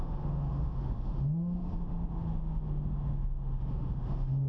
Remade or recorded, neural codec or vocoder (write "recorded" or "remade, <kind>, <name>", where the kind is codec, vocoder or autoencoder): remade, autoencoder, DAC-VAE